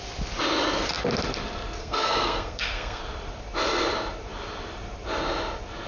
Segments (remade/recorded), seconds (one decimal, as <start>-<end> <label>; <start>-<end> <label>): 0.0-1.8 recorded; 1.8-3.0 remade; 3.0-5.9 recorded